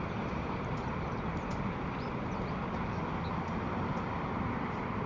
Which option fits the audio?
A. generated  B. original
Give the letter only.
B